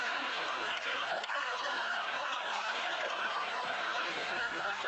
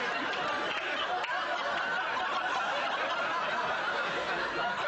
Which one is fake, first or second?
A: first